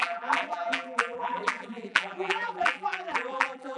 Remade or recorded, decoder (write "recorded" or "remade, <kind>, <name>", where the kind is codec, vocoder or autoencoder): remade, vocoder, BigVGAN v2